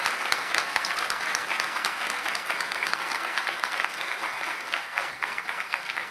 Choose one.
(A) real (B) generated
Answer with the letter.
B